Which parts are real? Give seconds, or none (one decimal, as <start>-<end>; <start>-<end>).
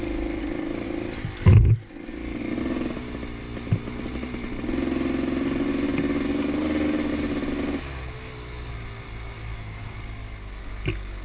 0.0-11.2